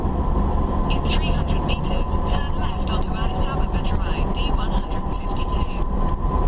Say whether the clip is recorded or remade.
recorded